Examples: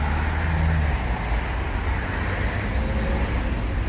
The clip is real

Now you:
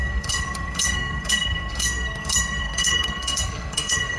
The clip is fake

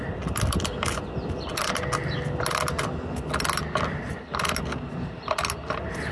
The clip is real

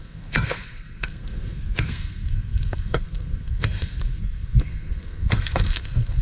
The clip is fake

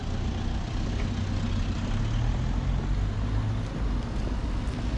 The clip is real